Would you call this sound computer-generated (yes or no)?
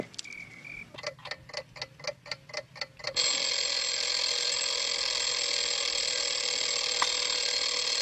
no